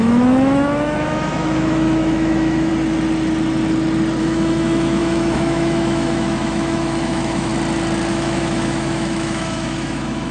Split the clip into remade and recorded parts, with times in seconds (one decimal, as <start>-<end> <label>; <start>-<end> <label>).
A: 0.0-2.7 remade; 2.7-4.2 recorded; 4.2-7.5 remade; 7.5-8.1 recorded; 8.1-10.3 remade

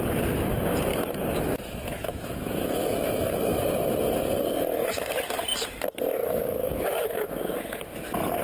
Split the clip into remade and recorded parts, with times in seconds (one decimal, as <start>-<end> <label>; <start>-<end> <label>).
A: 0.0-0.9 recorded; 0.9-3.6 remade; 3.6-6.2 recorded; 6.2-7.3 remade; 7.3-8.4 recorded